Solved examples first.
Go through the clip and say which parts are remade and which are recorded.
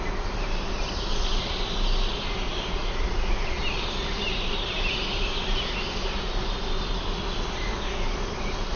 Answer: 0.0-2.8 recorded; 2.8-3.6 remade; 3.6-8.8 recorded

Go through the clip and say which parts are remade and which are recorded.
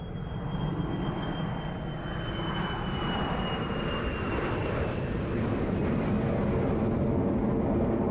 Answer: 0.0-4.6 recorded; 4.6-5.8 remade; 5.8-8.1 recorded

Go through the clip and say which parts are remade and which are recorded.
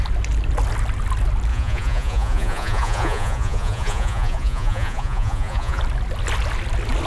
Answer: 0.0-1.5 recorded; 1.5-5.8 remade; 5.8-7.1 recorded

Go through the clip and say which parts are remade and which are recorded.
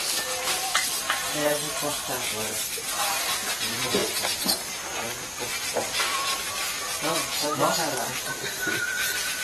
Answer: 0.0-9.4 recorded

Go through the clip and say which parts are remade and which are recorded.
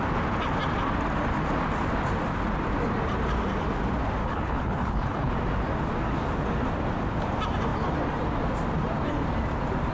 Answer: 0.0-4.2 recorded; 4.2-5.3 remade; 5.3-9.9 recorded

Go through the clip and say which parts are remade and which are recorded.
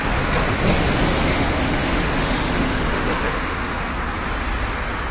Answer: 0.0-0.7 recorded; 0.7-3.9 remade; 3.9-5.1 recorded